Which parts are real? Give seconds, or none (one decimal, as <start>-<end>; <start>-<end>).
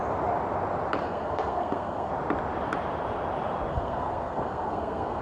0.0-1.0; 2.1-3.7